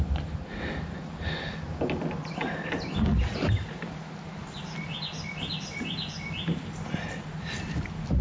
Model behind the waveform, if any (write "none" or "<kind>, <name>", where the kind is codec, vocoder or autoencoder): none